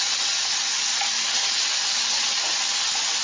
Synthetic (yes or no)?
no